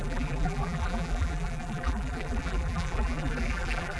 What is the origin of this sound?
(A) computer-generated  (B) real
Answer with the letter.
A